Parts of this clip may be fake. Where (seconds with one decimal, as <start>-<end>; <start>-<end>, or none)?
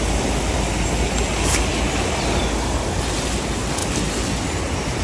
none